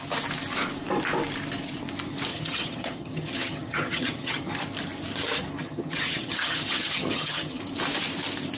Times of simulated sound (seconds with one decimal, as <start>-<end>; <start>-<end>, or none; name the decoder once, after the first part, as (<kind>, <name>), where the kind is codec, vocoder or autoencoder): 2.3-4.5 (vocoder, HiFi-GAN); 5.6-7.6